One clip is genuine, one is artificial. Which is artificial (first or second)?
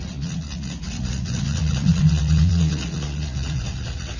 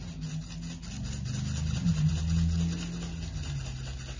first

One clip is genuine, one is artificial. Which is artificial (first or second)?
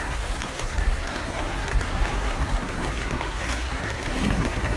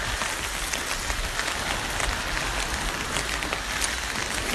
first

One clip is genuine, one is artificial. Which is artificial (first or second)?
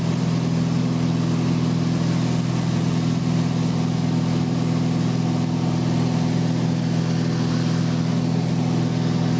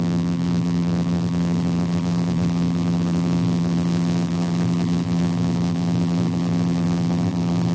second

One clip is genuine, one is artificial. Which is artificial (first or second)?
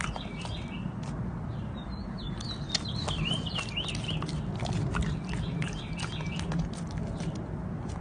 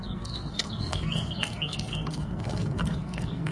second